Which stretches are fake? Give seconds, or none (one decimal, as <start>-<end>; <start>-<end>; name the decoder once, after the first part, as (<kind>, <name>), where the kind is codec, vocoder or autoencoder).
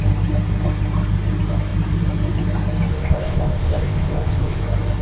2.9-4.6 (codec, ZipCodec)